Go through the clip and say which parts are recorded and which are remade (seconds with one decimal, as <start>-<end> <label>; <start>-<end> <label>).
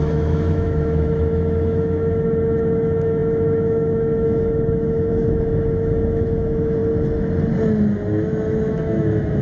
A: 0.0-6.8 remade; 6.8-8.7 recorded; 8.7-9.4 remade